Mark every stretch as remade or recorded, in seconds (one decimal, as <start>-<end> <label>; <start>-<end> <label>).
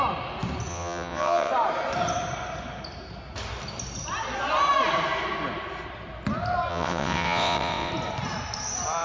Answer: 0.0-0.7 recorded; 0.7-1.5 remade; 1.5-6.7 recorded; 6.7-7.9 remade; 7.9-9.0 recorded